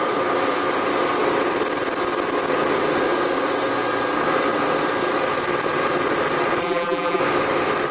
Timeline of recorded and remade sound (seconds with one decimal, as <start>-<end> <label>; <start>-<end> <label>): 0.0-6.6 recorded; 6.6-7.2 remade; 7.2-7.9 recorded